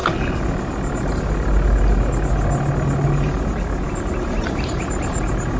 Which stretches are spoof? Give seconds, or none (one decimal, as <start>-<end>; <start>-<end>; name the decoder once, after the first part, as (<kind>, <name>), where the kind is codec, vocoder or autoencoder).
none